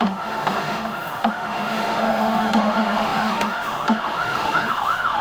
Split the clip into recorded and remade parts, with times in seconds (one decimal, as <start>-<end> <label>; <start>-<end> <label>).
0.0-5.2 remade